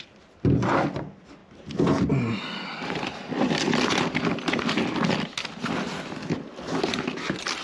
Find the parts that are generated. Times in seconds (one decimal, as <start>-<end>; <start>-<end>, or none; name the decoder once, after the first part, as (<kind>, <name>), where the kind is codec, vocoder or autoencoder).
none